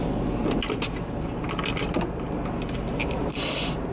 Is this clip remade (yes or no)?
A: no